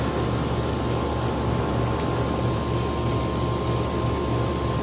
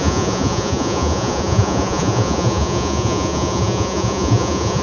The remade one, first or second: second